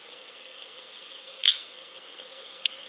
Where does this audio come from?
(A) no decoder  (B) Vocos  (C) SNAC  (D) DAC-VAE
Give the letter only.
C